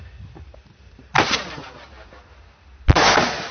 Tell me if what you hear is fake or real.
real